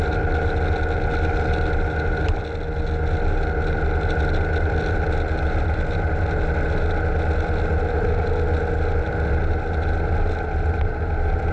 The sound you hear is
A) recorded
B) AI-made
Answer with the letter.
A